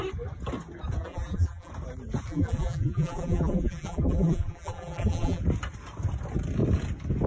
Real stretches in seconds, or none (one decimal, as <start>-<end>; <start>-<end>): 0.0-1.0; 1.7-2.3; 5.4-7.3

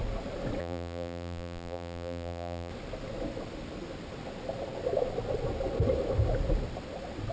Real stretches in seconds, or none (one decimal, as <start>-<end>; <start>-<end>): 0.0-0.6; 2.7-7.3

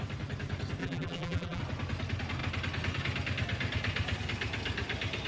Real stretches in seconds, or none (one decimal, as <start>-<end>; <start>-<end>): 0.0-0.8; 1.6-5.3

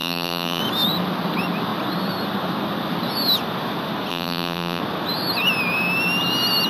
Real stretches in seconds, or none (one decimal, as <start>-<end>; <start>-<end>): 0.6-4.1; 4.8-6.7

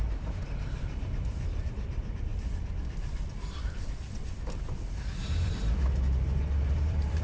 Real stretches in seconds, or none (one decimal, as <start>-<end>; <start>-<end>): 2.3-5.1

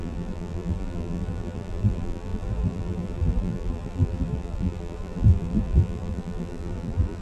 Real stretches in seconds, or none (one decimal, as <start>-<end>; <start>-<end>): none